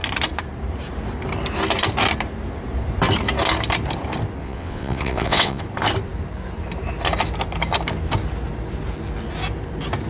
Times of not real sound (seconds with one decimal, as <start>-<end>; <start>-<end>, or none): 4.4-5.6